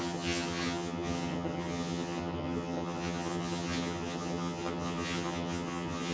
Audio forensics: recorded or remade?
remade